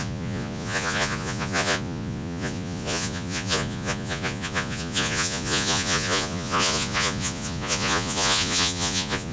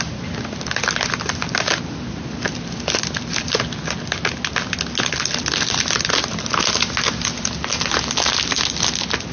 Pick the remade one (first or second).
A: first